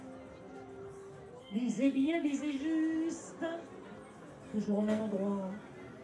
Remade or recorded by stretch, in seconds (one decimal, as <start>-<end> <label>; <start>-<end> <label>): 0.0-1.4 recorded; 1.4-2.6 remade; 2.6-4.5 recorded; 4.5-5.0 remade; 5.0-6.0 recorded